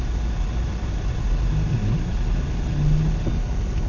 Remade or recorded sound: recorded